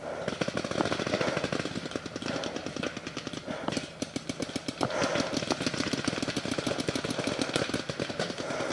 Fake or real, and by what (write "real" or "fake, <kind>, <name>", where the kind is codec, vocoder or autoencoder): real